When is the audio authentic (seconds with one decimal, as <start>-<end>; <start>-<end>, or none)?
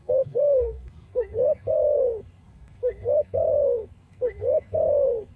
none